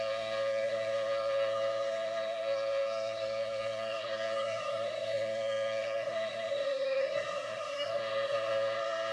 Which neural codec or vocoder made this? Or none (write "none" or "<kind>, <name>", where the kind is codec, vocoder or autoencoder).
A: codec, SNAC